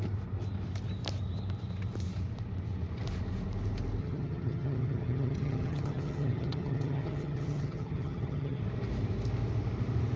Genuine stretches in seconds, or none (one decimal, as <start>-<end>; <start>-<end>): 0.0-4.0; 8.6-10.2